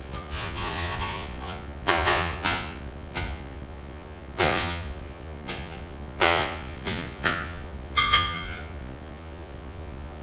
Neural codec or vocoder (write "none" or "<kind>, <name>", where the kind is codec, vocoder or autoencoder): vocoder, Vocos